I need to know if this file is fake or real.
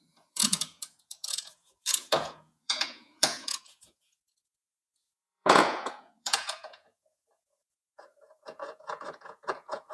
fake